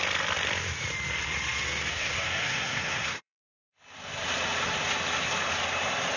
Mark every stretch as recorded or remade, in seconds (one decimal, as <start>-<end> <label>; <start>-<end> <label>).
0.0-1.9 recorded; 1.9-3.5 remade; 3.5-6.2 recorded